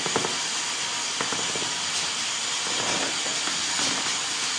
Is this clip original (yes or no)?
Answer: yes